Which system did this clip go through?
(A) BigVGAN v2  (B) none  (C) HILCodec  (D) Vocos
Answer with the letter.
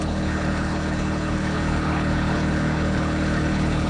C